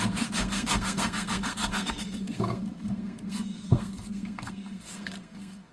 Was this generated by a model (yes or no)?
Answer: yes